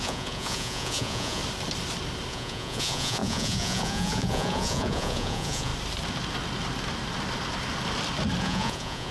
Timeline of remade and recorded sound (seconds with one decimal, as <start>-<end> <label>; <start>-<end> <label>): 0.0-1.4 remade; 1.4-2.3 recorded; 2.3-5.7 remade; 5.7-8.4 recorded; 8.4-9.1 remade